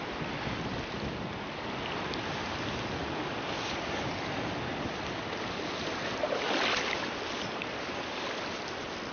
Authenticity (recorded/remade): recorded